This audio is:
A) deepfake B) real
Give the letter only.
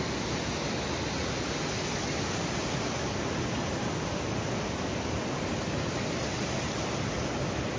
B